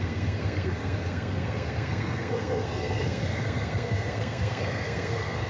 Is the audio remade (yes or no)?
yes